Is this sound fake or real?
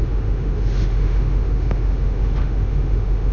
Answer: fake